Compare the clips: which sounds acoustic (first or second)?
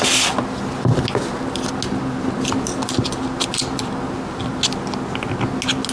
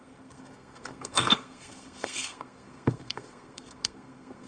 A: first